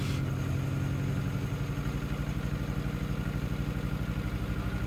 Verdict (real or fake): real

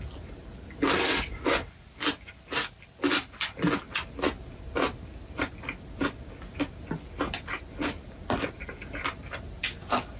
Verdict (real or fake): real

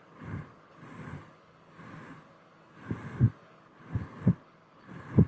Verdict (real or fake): real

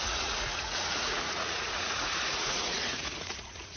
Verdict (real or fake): fake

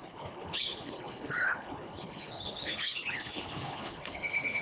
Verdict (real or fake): fake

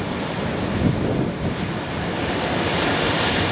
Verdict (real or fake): real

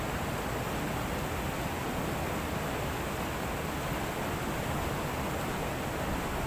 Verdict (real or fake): real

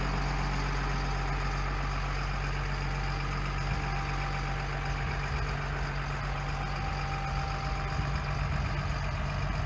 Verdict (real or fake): real